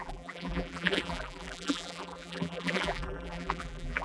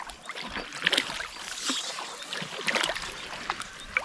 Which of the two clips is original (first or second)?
second